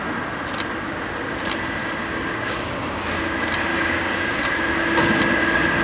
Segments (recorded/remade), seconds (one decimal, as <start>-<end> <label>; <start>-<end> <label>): 0.0-1.8 recorded; 1.8-3.0 remade; 3.0-3.7 recorded; 3.7-4.5 remade; 4.5-5.8 recorded